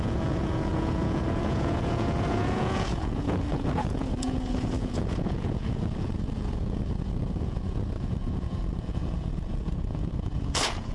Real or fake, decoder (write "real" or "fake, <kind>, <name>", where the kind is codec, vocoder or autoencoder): fake, vocoder, Vocos